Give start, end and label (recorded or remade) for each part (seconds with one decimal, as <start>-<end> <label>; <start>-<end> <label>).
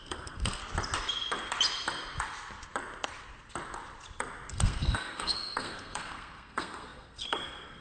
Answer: 0.0-0.6 remade; 0.6-4.5 recorded; 4.5-7.8 remade